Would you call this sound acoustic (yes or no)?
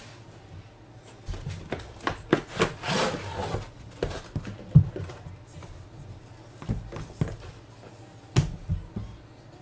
yes